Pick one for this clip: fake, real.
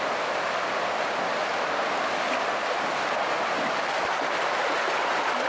real